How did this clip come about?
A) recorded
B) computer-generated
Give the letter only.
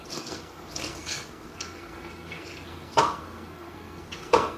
B